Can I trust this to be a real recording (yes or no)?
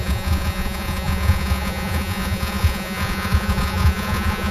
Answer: no